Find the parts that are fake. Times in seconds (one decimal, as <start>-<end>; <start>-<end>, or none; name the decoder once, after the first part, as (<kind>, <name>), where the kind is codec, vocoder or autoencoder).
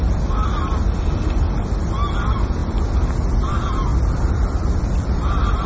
none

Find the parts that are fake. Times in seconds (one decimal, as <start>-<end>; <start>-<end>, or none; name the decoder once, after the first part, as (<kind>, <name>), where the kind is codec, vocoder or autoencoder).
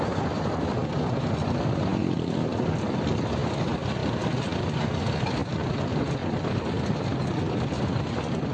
none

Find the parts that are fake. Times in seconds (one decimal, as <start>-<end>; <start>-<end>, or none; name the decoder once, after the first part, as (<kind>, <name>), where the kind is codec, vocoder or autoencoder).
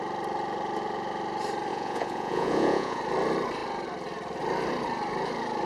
1.7-3.0 (vocoder, Vocos)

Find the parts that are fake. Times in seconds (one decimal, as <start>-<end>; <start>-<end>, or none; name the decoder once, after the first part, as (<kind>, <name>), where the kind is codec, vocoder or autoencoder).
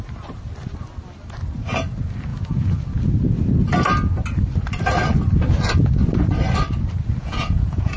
2.3-2.8 (vocoder, Vocos); 7.2-8.0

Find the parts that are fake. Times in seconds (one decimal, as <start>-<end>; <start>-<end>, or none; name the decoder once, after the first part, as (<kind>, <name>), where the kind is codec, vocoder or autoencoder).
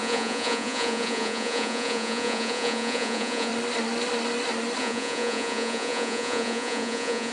0.0-3.5 (vocoder, Vocos); 4.8-7.3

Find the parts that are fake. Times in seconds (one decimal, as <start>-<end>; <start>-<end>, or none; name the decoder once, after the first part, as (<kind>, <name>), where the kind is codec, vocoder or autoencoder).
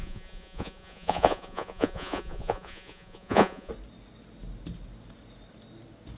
0.0-3.7 (vocoder, Vocos)